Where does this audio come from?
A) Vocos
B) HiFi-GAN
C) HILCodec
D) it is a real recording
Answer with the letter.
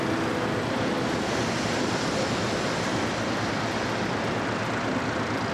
D